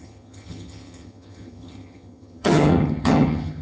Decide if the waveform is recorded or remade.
remade